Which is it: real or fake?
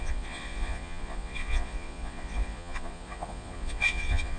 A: fake